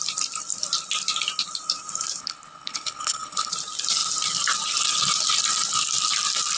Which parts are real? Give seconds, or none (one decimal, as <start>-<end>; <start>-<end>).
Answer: 0.0-2.2; 3.5-6.6